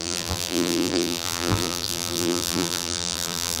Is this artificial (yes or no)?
yes